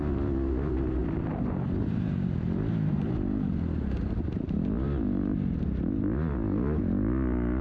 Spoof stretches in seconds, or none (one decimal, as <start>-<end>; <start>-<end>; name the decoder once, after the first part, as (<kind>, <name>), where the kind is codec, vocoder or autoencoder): 1.0-3.1 (vocoder, BigVGAN v2)